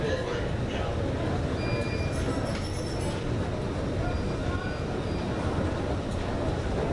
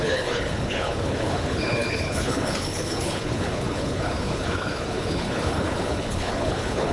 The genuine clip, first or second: first